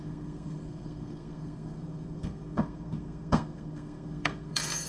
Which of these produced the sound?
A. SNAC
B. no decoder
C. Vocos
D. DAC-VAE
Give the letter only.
A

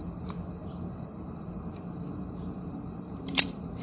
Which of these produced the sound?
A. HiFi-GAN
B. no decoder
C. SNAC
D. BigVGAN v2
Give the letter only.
D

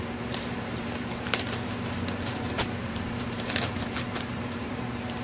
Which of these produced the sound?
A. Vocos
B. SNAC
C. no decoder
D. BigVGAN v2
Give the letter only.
D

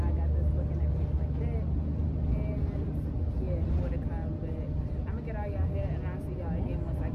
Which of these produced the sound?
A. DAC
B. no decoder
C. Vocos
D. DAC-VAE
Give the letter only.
B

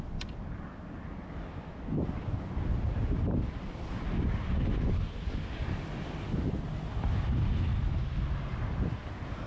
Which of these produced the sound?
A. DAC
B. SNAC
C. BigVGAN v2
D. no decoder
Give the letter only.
D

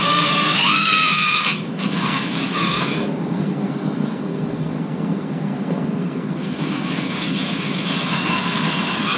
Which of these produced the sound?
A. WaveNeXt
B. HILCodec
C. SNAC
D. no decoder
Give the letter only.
C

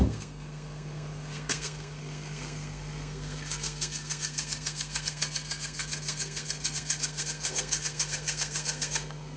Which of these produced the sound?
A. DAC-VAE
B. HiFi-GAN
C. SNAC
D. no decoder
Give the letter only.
C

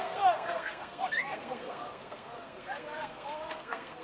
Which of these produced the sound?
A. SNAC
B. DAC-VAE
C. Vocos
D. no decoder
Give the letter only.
A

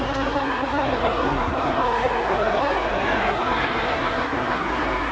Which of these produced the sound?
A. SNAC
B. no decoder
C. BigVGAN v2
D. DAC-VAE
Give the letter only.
A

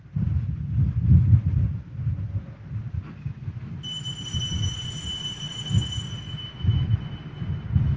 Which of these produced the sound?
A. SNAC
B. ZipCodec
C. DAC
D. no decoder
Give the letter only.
D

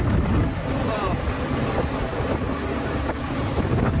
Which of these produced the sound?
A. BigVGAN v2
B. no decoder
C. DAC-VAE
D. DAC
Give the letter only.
B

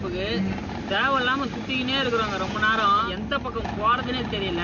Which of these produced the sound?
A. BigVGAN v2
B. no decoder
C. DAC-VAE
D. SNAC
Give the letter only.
B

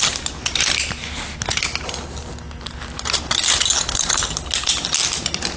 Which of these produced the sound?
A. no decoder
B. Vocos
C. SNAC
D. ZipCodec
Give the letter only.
A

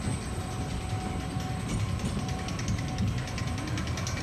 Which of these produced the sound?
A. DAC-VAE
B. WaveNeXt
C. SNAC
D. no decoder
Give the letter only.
D